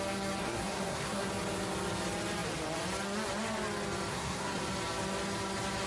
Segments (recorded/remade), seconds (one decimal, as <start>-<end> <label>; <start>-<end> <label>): 0.0-0.4 recorded; 0.4-1.3 remade; 1.3-4.1 recorded; 4.1-4.6 remade; 4.6-5.9 recorded